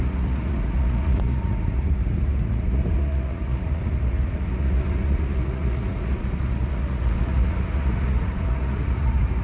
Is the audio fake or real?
fake